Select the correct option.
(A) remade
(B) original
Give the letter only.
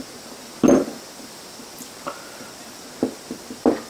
B